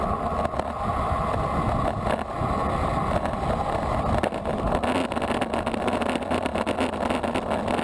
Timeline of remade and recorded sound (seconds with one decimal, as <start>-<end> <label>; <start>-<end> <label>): 0.0-7.8 recorded